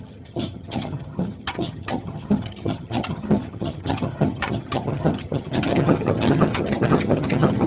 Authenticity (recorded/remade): remade